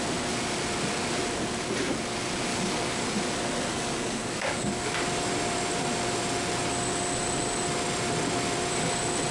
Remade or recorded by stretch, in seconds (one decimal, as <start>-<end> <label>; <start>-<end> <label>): 0.0-2.5 recorded; 2.5-3.2 remade; 3.2-3.7 recorded; 3.7-4.9 remade; 4.9-9.3 recorded